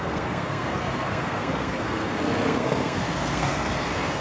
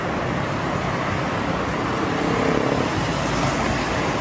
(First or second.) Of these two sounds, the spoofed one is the first